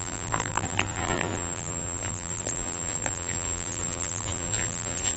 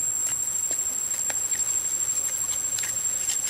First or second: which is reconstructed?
first